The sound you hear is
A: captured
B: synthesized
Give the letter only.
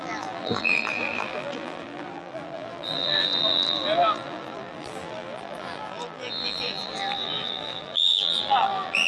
B